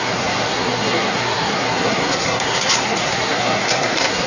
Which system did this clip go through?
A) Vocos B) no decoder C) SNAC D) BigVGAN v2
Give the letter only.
C